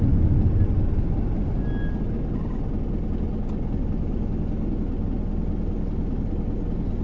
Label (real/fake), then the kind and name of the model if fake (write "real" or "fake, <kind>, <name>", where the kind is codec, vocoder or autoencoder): real